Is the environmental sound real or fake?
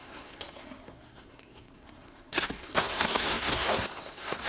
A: fake